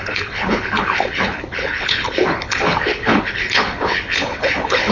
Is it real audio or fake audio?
fake